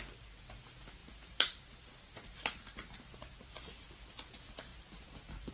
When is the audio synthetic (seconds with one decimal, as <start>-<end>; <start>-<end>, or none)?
1.0-3.5; 4.7-5.5